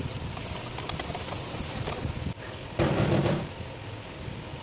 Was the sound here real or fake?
real